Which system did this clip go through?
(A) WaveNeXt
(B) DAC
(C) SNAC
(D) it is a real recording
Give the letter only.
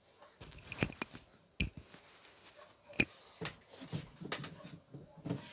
D